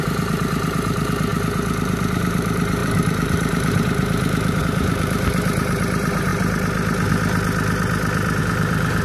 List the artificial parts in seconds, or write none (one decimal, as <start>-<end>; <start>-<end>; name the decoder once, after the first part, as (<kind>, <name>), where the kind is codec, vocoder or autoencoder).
0.0-6.3 (vocoder, BigVGAN v2); 8.4-9.0